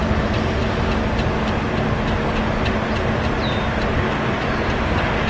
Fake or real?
real